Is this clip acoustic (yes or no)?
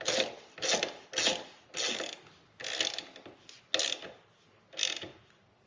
yes